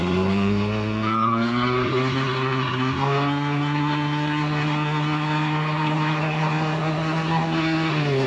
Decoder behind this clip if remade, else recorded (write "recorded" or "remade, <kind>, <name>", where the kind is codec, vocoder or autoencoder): remade, codec, SNAC